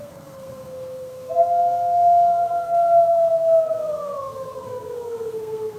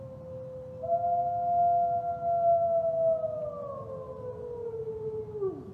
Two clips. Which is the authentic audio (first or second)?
second